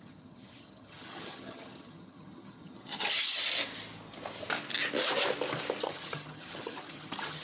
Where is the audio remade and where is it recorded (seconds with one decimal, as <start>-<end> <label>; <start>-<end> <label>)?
0.0-3.4 remade; 3.4-5.8 recorded; 5.8-7.4 remade